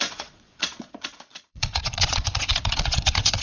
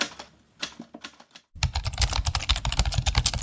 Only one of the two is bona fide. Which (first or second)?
second